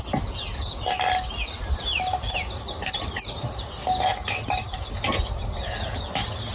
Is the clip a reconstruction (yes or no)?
no